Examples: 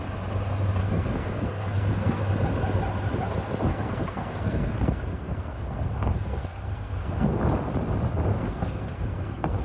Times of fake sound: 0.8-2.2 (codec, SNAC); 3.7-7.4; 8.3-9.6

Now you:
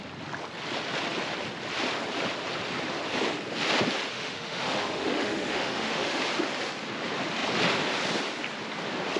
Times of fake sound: 4.1-6.2 (autoencoder, DAC-VAE)

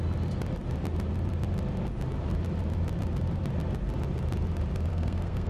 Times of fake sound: 4.9-5.5 (codec, SNAC)

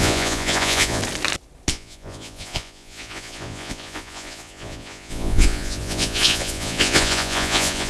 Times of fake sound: 0.0-1.0 (vocoder, Vocos); 1.7-7.9

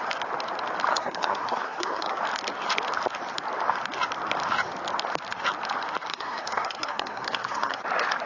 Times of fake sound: 0.9-2.2 (codec, SNAC); 6.1-7.8

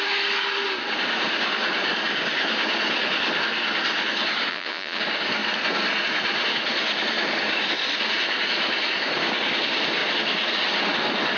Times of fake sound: 4.5-5.0 (vocoder, Vocos)